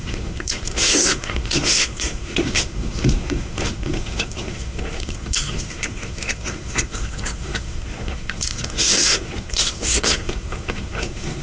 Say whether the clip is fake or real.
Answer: fake